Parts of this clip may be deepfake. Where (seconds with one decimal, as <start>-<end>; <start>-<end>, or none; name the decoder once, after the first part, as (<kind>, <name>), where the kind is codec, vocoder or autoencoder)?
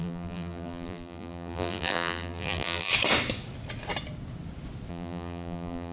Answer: 0.0-2.9 (vocoder, BigVGAN v2); 4.9-5.9